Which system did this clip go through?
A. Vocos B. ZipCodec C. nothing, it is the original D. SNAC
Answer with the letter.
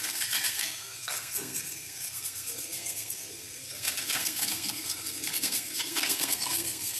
D